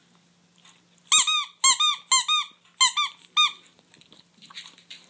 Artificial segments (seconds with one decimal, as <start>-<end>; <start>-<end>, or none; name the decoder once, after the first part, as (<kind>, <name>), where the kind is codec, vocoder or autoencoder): none